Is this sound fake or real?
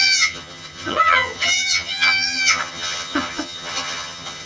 fake